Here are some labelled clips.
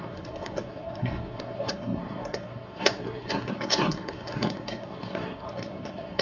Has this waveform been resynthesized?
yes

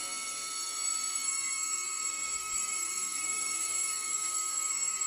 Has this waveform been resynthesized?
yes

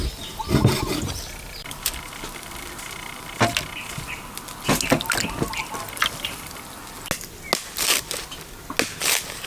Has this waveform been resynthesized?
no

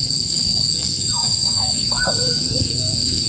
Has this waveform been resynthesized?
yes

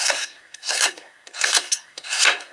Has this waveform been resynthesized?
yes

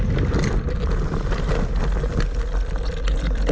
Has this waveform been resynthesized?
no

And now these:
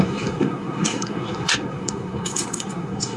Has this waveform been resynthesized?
yes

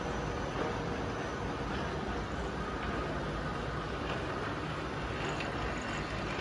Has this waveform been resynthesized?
no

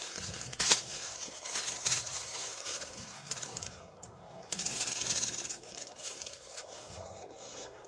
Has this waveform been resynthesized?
yes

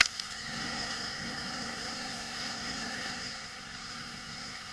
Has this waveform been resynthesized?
yes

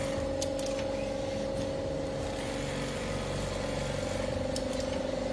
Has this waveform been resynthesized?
no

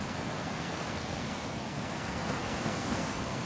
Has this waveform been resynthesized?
yes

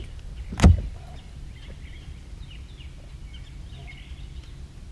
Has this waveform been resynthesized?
no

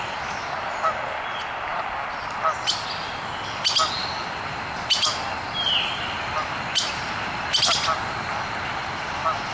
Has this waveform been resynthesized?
no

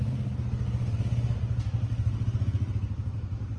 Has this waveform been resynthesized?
no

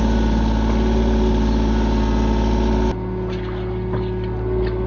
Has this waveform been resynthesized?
no